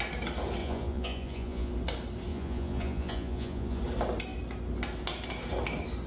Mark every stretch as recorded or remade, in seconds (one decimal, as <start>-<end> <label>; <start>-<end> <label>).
0.0-0.6 recorded; 0.6-1.7 remade; 1.7-2.3 recorded; 2.3-3.8 remade; 3.8-6.1 recorded

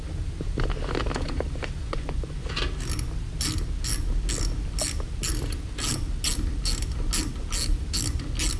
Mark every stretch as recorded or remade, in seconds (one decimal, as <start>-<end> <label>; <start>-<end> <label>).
0.0-1.8 recorded; 1.8-2.5 remade; 2.5-8.6 recorded

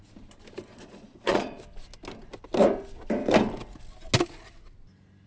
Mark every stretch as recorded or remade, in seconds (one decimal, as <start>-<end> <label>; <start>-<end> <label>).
0.0-0.7 recorded; 0.7-1.6 remade; 1.6-5.3 recorded

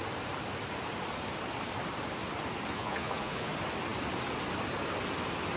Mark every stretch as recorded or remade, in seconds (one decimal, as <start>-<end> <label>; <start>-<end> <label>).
0.0-2.7 recorded; 2.7-3.5 remade; 3.5-5.6 recorded